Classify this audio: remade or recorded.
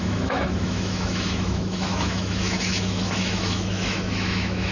remade